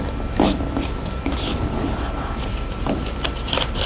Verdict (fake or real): real